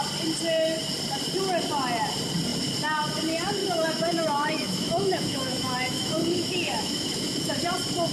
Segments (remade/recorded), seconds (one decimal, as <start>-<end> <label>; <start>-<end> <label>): 0.0-3.6 recorded; 3.6-7.6 remade; 7.6-8.1 recorded